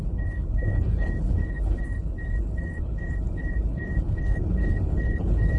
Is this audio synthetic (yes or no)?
yes